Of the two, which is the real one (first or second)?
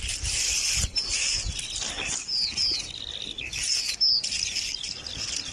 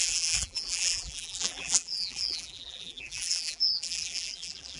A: first